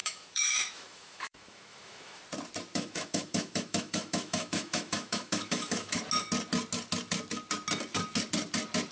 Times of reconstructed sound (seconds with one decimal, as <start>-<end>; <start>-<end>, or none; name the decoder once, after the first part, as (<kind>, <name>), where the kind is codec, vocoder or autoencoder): 0.0-2.2 (autoencoder, DAC-VAE); 2.7-6.0